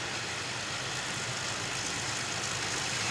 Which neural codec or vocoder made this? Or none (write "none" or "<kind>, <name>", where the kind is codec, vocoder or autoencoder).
none